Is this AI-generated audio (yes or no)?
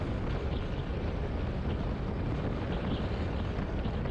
no